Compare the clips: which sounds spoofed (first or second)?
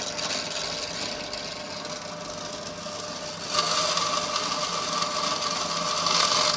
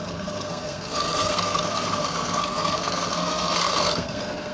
second